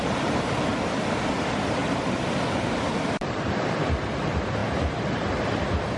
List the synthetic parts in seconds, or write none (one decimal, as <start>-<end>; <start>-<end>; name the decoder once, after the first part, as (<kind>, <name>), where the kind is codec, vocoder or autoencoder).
0.0-0.7 (vocoder, BigVGAN v2); 1.3-1.8; 2.9-6.0